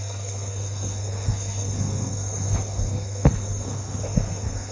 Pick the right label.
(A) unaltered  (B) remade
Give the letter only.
B